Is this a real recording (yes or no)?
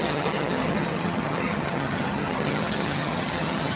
no